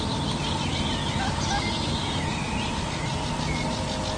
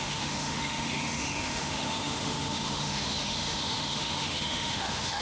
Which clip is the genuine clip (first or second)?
first